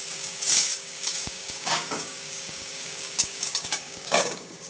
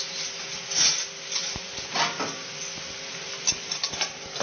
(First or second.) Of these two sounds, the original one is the second